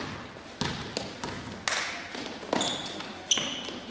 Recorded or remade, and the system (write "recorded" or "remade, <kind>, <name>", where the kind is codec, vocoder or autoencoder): recorded